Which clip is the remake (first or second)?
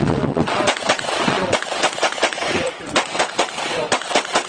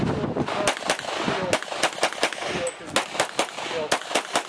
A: first